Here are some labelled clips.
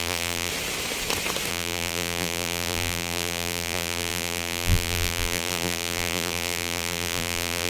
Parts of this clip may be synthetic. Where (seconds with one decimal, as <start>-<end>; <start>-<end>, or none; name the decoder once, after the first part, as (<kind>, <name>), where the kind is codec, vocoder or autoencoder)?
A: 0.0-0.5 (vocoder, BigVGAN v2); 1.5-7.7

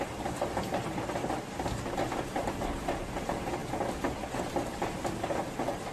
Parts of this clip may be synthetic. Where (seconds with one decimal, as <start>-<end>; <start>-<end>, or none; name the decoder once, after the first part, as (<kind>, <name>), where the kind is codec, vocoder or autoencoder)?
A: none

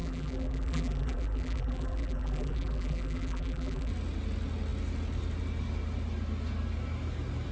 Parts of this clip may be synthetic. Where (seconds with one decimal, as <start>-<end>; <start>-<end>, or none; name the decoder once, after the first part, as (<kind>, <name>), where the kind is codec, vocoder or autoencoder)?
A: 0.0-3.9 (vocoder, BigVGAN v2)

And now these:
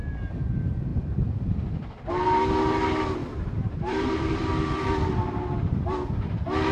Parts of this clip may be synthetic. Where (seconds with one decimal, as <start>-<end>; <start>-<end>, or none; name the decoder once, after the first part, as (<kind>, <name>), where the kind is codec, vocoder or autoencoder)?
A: 3.2-4.5 (vocoder, BigVGAN v2)